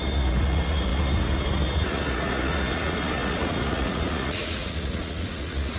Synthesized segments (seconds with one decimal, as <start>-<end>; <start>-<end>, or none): 0.0-5.8